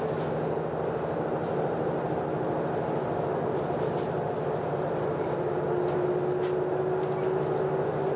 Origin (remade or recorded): recorded